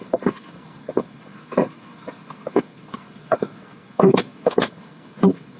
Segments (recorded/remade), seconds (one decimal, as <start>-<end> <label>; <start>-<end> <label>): 0.0-5.6 remade